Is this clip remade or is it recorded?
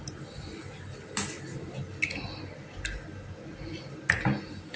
recorded